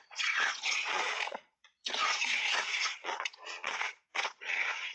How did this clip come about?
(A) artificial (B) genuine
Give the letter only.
A